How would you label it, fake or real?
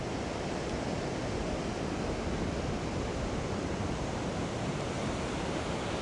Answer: real